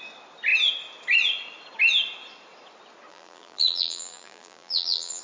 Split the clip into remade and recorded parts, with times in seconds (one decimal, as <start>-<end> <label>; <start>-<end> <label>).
0.0-3.1 recorded; 3.1-5.2 remade